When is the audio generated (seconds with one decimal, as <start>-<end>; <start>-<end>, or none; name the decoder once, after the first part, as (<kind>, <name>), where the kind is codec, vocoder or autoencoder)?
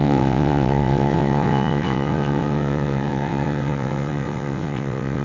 0.0-5.2 (vocoder, WaveNeXt)